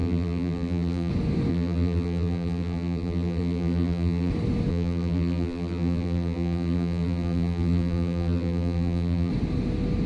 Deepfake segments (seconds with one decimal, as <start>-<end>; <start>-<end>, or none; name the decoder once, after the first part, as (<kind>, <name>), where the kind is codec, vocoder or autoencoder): 0.0-1.1 (vocoder, BigVGAN v2); 1.5-4.3; 4.7-9.3